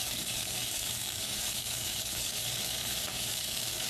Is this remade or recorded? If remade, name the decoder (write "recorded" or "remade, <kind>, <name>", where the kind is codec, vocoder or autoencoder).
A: remade, codec, DAC